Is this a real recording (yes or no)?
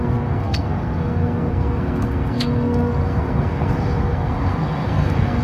no